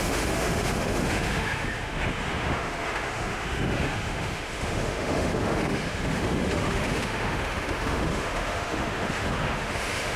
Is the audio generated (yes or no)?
yes